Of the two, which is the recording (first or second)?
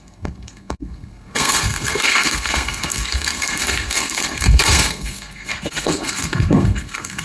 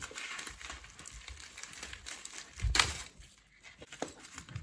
second